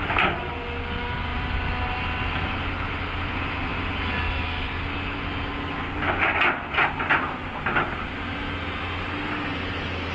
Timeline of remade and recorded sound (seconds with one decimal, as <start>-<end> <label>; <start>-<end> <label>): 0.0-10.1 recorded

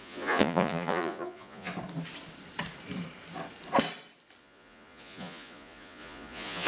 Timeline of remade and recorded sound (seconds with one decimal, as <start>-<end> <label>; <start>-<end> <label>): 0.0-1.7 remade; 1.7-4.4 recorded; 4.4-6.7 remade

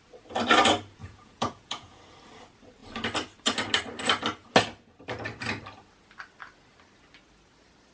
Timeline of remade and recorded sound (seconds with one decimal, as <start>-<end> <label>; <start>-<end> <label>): 0.0-1.0 recorded; 1.0-2.0 remade; 2.0-7.9 recorded

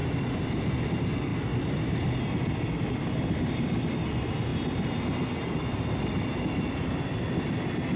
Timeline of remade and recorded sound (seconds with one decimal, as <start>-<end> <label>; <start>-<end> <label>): 0.0-8.0 recorded

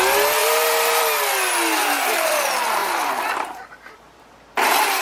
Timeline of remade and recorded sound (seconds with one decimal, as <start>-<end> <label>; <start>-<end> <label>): 0.0-0.4 recorded; 0.4-1.0 remade; 1.0-1.8 recorded; 1.8-2.4 remade; 2.4-2.8 recorded; 2.8-4.2 remade; 4.2-5.0 recorded

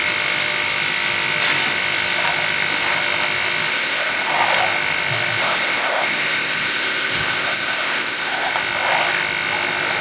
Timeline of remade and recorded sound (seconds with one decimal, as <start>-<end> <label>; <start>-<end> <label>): 0.0-3.7 recorded; 3.7-4.3 remade; 4.3-5.4 recorded; 5.4-8.5 remade; 8.5-10.0 recorded

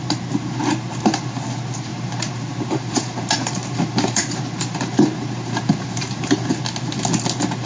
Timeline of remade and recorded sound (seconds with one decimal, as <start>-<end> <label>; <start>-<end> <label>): 0.0-0.6 remade; 0.6-1.9 recorded; 1.9-6.5 remade; 6.5-7.7 recorded